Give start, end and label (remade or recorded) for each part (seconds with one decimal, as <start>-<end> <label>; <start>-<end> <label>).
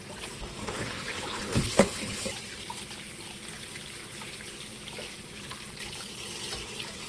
0.0-0.6 recorded; 0.6-2.2 remade; 2.2-7.1 recorded